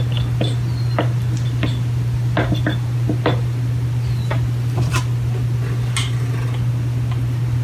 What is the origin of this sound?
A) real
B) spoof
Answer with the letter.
A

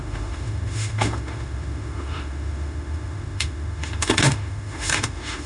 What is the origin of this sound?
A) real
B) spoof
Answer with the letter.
B